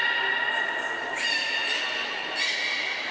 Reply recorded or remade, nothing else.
recorded